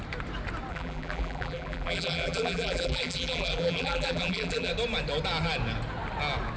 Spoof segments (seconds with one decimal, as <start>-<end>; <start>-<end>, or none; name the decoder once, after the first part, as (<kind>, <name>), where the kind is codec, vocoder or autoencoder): 0.7-4.7 (vocoder, BigVGAN v2)